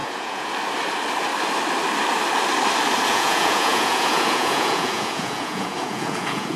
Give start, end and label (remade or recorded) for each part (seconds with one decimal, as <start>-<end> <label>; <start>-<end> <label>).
0.0-0.5 remade; 0.5-3.1 recorded; 3.1-6.6 remade